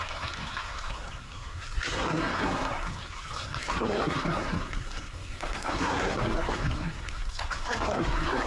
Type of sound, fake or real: fake